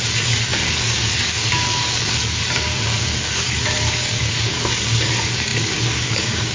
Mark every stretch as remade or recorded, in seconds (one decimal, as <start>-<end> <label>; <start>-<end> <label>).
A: 0.0-6.5 remade